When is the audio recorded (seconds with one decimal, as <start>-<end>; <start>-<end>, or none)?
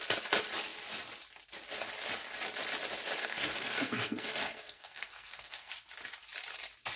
0.0-3.2; 5.7-7.0